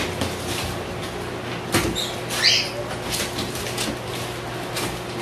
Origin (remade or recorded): recorded